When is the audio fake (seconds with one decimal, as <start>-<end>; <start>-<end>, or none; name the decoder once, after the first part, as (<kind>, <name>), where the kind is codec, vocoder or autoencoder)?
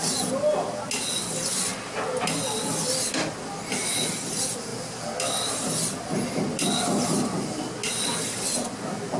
none